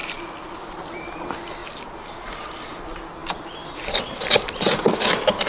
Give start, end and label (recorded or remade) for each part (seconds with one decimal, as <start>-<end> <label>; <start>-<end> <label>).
0.0-1.2 remade; 1.2-1.6 recorded; 1.6-2.4 remade; 2.4-5.5 recorded